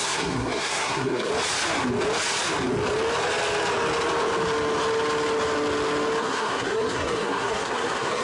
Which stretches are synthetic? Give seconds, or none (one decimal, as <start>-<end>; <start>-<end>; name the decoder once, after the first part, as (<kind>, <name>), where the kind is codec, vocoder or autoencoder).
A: 0.0-1.3 (codec, SNAC); 6.2-8.2